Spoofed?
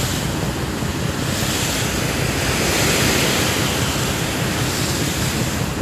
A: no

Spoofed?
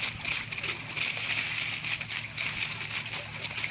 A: no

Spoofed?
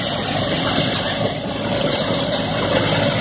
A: no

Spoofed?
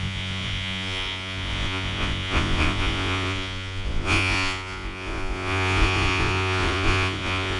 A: yes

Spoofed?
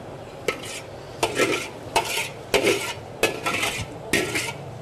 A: no